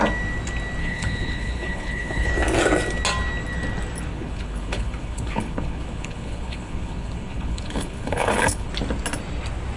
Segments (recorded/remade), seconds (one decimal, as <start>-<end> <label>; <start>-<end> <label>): 0.0-0.8 recorded; 0.8-2.3 remade; 2.3-4.1 recorded; 4.1-8.7 remade; 8.7-9.8 recorded